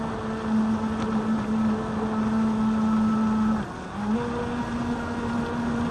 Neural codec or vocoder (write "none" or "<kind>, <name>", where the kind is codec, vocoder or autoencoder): none